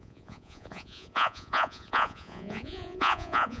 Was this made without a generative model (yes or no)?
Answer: no